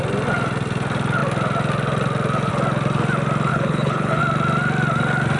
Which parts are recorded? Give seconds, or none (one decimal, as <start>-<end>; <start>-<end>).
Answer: 0.0-3.5; 4.2-5.4